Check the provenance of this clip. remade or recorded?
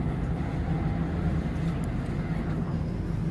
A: recorded